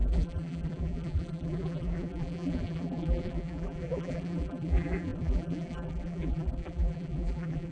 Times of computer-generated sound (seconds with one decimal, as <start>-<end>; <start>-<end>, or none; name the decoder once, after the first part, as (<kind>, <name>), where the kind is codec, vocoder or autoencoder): 0.0-7.7 (vocoder, BigVGAN v2)

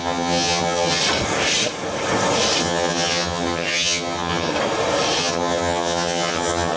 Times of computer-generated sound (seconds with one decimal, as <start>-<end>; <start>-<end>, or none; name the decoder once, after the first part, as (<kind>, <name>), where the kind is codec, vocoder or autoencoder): 0.0-1.0 (vocoder, HiFi-GAN); 2.6-4.5; 5.2-6.8

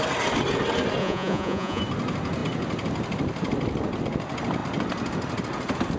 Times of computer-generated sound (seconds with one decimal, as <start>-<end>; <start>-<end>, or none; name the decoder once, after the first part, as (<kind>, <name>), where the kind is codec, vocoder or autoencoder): 1.0-1.8 (vocoder, Vocos)

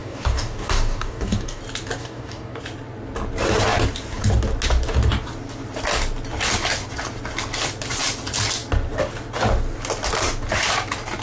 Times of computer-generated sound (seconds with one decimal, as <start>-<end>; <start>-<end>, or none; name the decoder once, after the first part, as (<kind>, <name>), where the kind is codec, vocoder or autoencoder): 0.0-1.6 (codec, DAC); 2.0-2.6

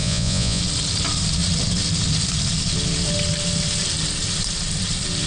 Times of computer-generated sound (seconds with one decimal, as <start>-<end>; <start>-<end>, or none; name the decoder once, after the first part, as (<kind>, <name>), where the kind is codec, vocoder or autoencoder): 0.0-0.6 (vocoder, Vocos)

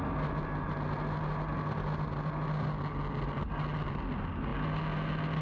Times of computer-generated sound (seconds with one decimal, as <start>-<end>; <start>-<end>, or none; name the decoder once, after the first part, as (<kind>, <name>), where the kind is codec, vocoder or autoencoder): none

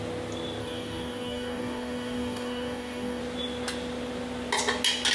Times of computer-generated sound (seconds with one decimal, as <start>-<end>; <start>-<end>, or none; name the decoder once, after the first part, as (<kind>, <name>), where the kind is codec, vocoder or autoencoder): 0.6-3.2 (codec, DAC)